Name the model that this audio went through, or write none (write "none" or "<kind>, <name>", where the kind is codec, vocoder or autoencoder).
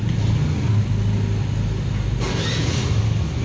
none